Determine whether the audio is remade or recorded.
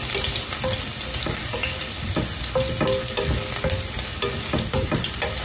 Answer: recorded